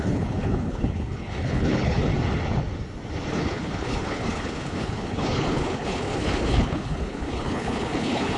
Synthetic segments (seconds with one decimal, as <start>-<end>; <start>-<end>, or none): 0.0-2.1; 3.3-8.4